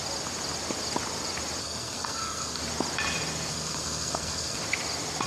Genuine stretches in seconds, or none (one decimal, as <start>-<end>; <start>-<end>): 0.0-1.6; 2.6-3.5; 4.6-5.3